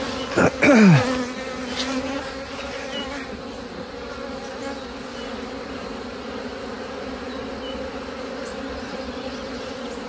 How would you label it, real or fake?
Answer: real